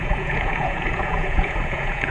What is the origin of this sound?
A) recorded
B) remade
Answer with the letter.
B